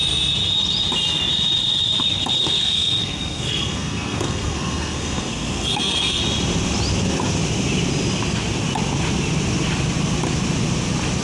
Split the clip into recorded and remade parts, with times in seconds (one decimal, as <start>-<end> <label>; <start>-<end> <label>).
0.0-2.4 recorded; 2.4-6.2 remade; 6.2-11.2 recorded